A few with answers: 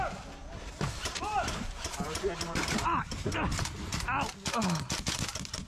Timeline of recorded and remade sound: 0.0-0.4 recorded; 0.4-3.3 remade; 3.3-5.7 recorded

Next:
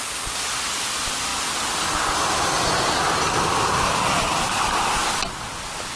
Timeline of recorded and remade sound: 0.0-6.0 recorded

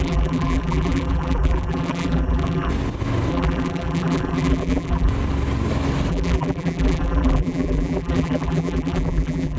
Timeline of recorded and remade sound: 0.0-2.7 remade; 2.7-3.3 recorded; 3.3-5.1 remade; 5.1-6.1 recorded; 6.1-9.6 remade